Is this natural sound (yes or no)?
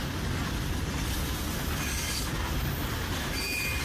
yes